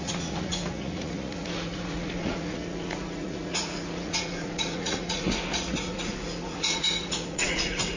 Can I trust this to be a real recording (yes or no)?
no